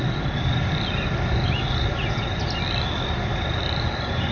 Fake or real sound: real